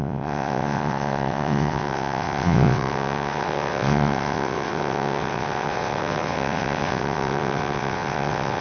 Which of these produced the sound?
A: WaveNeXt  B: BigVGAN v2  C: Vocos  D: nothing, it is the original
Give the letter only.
A